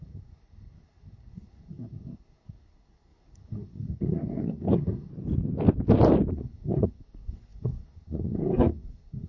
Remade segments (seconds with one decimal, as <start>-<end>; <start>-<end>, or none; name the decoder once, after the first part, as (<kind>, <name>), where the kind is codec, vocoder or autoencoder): 0.0-5.1 (codec, SNAC); 6.3-9.3